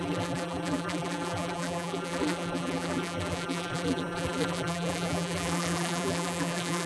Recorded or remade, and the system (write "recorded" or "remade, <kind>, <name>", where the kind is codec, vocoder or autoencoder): remade, vocoder, BigVGAN v2